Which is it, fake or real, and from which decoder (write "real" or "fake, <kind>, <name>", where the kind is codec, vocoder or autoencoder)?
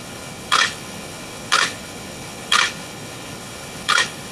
fake, codec, HILCodec